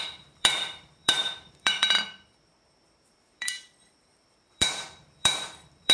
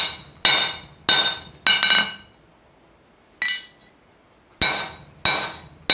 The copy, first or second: first